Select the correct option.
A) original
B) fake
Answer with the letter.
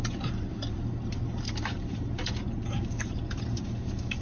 B